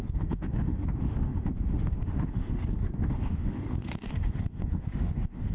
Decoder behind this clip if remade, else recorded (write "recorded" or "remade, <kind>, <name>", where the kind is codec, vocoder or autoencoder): remade, autoencoder, DAC-VAE